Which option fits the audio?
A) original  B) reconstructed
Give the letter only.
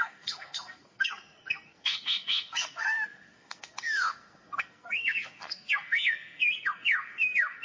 B